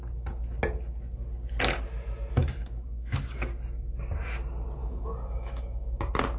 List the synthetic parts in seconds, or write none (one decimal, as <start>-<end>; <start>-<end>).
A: 2.4-3.2; 4.8-6.0